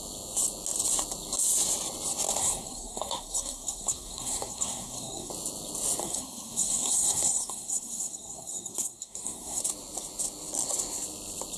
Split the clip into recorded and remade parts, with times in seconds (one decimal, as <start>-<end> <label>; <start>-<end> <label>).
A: 0.0-2.4 recorded; 2.4-5.3 remade; 5.3-6.0 recorded; 6.0-9.6 remade; 9.6-11.6 recorded